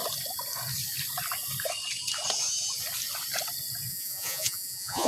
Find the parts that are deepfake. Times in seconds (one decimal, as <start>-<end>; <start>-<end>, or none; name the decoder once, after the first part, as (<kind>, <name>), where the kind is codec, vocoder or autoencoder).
3.9-5.1 (vocoder, Vocos)